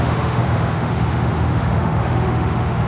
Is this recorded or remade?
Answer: remade